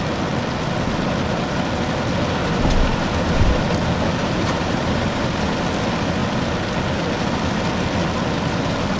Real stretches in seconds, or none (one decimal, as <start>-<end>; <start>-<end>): 0.0-2.4; 3.6-4.2; 5.2-9.0